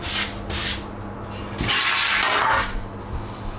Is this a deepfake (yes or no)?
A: no